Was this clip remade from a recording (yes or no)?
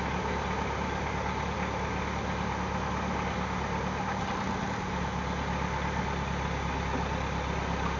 no